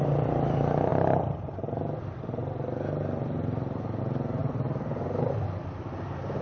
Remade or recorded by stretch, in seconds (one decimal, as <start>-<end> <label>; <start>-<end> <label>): 0.0-4.4 recorded; 4.4-5.8 remade; 5.8-6.4 recorded